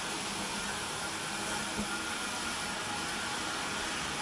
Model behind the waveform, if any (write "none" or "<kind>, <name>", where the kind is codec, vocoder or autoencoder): none